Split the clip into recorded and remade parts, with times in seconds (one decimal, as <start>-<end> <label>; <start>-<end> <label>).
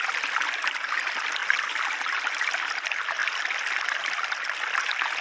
0.0-5.2 recorded